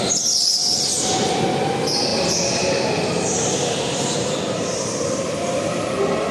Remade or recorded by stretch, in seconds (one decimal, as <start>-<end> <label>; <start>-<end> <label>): 0.0-2.1 recorded; 2.1-6.3 remade